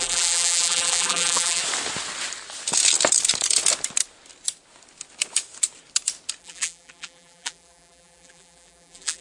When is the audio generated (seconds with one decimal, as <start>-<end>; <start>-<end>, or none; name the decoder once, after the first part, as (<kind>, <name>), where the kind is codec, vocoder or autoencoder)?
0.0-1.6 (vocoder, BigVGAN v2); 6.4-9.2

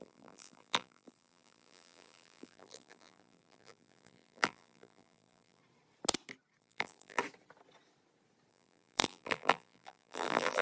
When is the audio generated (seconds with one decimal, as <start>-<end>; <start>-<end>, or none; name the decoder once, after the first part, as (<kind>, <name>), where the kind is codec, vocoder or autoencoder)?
0.0-5.6 (vocoder, BigVGAN v2); 6.6-7.2; 8.5-10.6

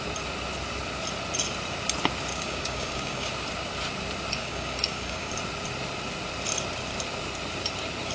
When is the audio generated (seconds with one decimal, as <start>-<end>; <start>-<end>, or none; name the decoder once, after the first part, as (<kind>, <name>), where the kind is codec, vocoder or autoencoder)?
2.3-3.3 (codec, DAC); 4.4-5.3

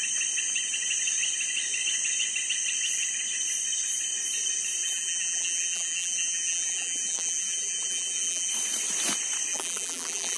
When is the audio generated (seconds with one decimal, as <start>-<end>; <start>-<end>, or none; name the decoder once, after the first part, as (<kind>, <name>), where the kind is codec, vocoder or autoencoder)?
4.8-8.5 (vocoder, BigVGAN v2); 9.5-10.4

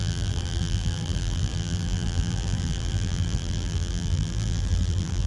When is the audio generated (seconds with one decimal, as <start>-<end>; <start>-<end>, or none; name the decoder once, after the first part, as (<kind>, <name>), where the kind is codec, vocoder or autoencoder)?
0.0-5.3 (vocoder, BigVGAN v2)

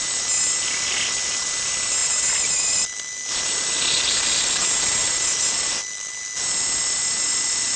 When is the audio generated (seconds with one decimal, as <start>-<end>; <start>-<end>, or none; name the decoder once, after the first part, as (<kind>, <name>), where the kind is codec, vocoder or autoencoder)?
none

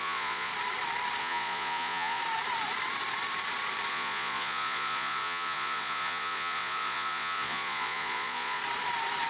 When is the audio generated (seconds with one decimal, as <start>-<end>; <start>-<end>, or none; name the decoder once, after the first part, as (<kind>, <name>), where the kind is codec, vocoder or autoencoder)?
0.0-0.5 (vocoder, Vocos); 1.2-2.2; 3.9-8.6